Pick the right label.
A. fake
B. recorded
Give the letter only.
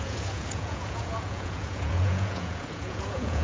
A